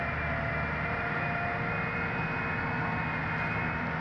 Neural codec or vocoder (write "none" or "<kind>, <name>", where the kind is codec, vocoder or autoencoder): none